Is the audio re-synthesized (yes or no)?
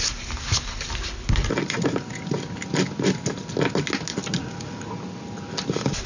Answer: no